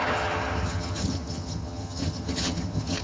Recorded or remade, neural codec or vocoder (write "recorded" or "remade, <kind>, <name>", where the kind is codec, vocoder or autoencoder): remade, vocoder, HiFi-GAN